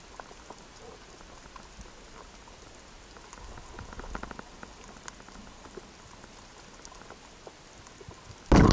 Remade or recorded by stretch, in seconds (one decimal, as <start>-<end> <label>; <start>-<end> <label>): 0.0-8.7 recorded